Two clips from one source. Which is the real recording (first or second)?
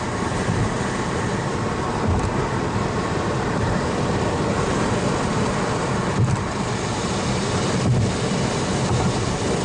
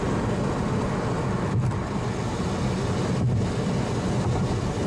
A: second